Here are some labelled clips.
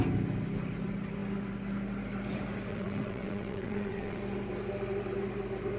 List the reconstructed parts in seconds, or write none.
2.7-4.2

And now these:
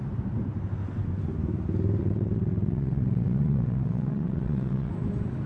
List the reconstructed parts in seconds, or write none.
2.0-4.9

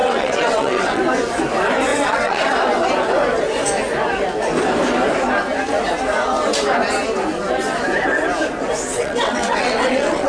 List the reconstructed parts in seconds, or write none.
0.0-1.0; 1.9-2.5; 8.9-10.3

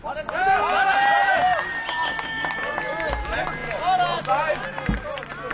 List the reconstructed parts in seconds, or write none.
none

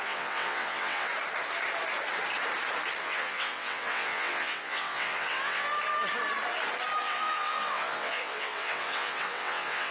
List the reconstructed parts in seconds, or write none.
0.0-1.1; 3.0-5.7; 7.0-9.9

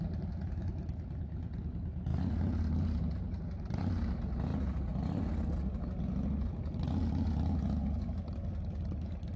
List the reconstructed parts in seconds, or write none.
none

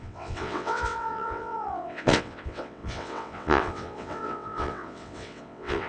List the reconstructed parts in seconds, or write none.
0.0-5.9

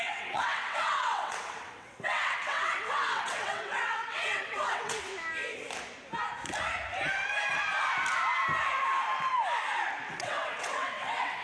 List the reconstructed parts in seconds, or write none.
0.0-5.1; 10.1-11.4